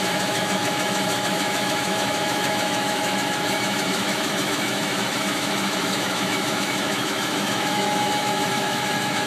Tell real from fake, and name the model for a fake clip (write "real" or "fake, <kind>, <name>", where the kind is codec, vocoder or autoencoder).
fake, autoencoder, DAC-VAE